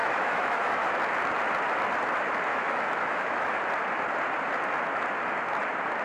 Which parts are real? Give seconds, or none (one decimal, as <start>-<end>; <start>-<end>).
0.9-2.5; 3.6-6.0